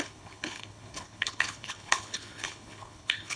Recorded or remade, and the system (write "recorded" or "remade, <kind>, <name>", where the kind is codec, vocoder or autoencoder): remade, codec, HILCodec